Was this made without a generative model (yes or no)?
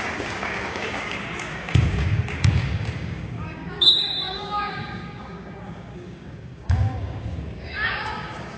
no